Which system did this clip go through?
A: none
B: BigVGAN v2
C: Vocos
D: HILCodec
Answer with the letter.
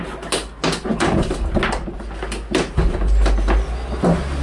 A